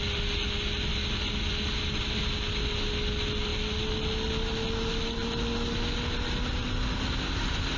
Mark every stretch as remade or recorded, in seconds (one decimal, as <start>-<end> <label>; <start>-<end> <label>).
0.0-7.8 recorded